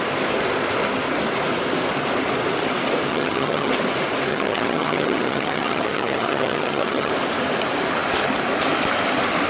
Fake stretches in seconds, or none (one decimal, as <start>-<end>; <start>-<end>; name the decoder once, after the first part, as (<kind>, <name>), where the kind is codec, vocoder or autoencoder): 3.1-3.7 (vocoder, HiFi-GAN); 4.3-7.1